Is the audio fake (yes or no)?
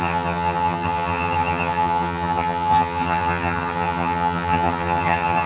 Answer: yes